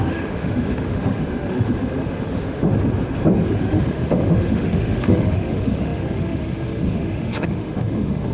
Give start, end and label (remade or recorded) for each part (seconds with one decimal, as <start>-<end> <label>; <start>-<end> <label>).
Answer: 0.0-2.7 remade; 2.7-3.5 recorded; 3.5-8.3 remade